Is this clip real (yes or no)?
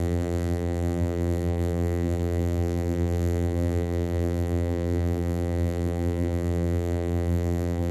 no